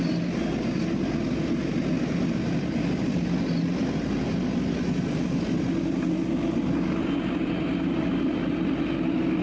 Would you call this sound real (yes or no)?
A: yes